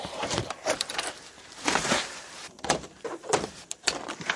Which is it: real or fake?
fake